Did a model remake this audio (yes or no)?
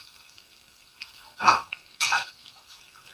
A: yes